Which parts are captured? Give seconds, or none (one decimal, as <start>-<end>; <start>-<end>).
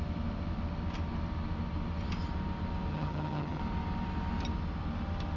0.0-2.9; 3.6-5.4